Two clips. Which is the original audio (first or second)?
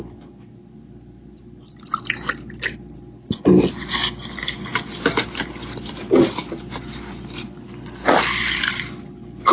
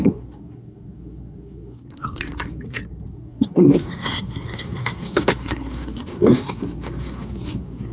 first